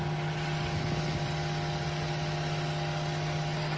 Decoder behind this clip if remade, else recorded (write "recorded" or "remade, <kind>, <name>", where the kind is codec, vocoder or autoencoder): recorded